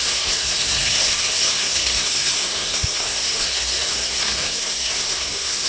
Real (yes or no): no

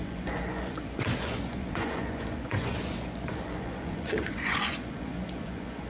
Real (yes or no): no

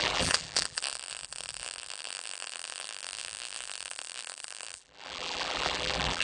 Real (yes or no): no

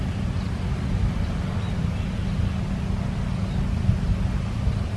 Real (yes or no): yes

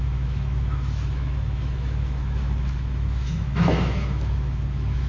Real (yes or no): no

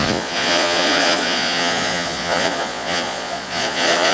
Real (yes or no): no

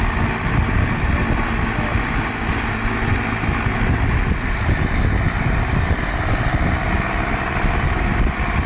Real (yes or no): yes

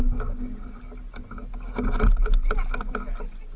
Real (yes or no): yes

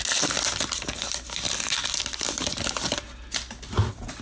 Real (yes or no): yes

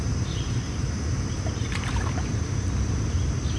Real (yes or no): no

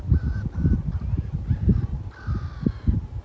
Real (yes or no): yes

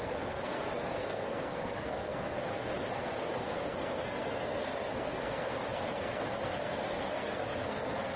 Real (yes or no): no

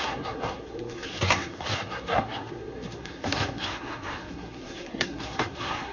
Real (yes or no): no